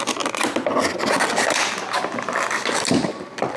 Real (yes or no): no